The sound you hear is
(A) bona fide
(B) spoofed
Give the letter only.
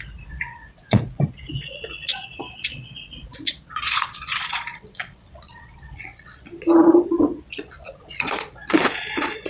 B